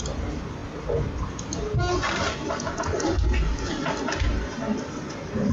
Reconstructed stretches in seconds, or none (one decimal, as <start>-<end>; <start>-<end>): none